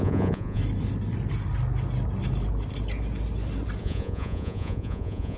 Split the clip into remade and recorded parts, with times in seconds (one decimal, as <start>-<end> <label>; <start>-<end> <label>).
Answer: 0.0-0.6 remade; 0.6-3.8 recorded; 3.8-5.4 remade